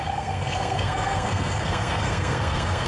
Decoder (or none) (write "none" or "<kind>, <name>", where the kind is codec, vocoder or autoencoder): codec, SNAC